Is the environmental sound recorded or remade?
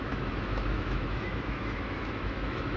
remade